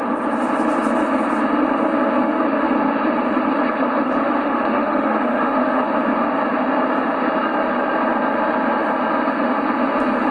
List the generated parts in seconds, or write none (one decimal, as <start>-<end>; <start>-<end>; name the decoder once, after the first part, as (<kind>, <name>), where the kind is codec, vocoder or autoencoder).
4.4-5.8 (autoencoder, DAC-VAE)